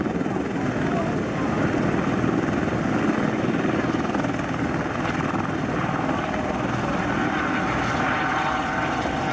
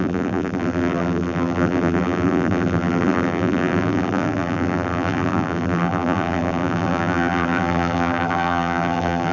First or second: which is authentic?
first